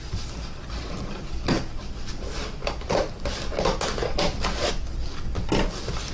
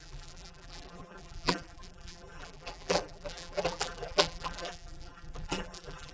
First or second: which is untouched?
first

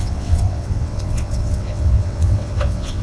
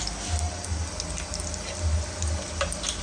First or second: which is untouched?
second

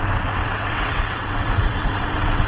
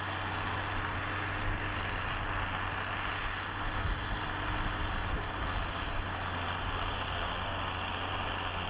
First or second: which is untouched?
second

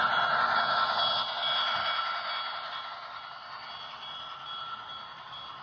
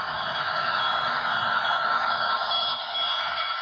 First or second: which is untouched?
first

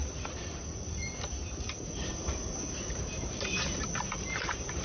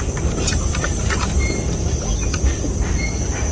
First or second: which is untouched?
second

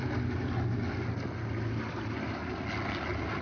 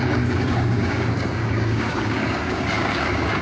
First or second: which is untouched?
first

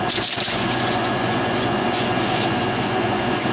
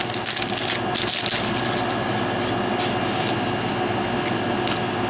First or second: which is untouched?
second